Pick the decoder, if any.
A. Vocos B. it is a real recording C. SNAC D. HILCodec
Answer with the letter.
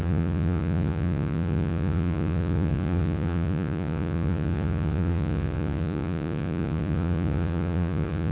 A